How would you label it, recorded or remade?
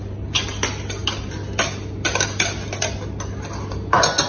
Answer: recorded